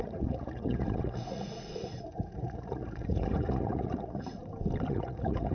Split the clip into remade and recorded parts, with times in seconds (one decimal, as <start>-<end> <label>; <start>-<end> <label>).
0.0-4.4 remade; 4.4-4.9 recorded; 4.9-5.5 remade